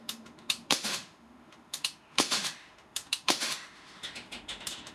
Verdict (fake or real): fake